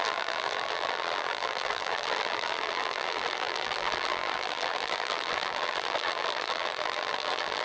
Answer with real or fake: fake